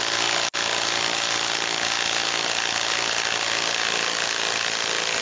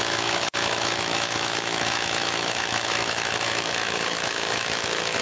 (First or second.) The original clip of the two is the first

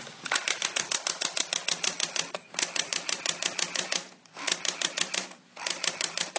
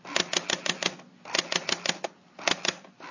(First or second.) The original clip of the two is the second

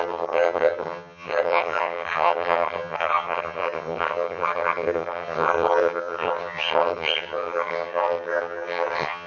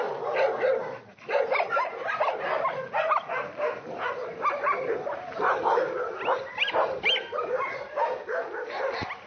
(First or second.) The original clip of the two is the second